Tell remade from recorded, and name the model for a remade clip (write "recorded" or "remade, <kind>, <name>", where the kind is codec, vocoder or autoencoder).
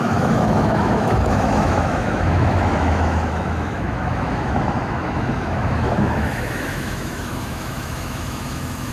remade, autoencoder, DAC-VAE